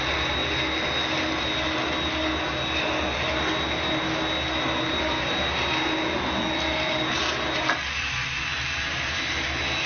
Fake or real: real